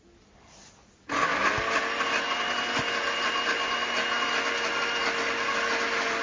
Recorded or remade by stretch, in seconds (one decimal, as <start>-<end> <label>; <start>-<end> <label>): 0.0-6.2 recorded